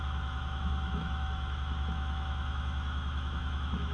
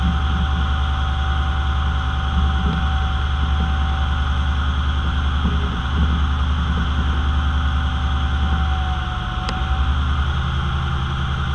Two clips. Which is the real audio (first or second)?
second